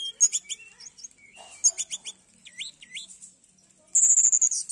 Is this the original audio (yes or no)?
yes